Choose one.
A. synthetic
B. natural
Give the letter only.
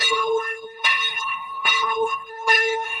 A